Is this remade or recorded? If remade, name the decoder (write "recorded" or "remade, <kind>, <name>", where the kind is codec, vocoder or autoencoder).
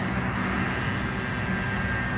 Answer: recorded